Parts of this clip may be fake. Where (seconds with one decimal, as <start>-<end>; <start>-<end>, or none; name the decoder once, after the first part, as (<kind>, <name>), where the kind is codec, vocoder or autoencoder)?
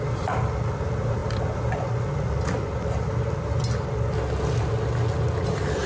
none